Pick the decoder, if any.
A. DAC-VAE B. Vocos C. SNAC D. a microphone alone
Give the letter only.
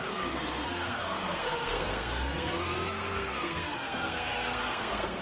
C